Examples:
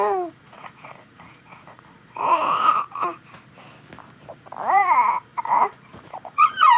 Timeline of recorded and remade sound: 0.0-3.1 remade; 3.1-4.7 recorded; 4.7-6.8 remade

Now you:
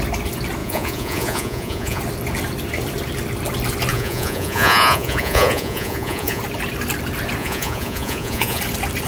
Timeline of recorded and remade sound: 0.0-0.6 recorded; 0.6-2.0 remade; 2.0-3.9 recorded; 3.9-6.4 remade; 6.4-7.4 recorded; 7.4-8.6 remade; 8.6-9.1 recorded

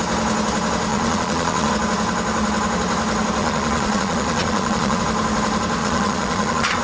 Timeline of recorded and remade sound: 0.0-0.9 recorded; 0.9-1.7 remade; 1.7-3.4 recorded; 3.4-5.0 remade; 5.0-5.8 recorded; 5.8-6.8 remade